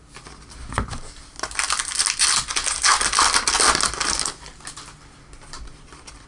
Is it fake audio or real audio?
real